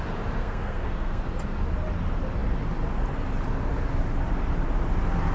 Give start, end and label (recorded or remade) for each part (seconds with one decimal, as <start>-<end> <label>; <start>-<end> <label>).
0.0-0.4 recorded; 0.4-1.2 remade; 1.2-5.3 recorded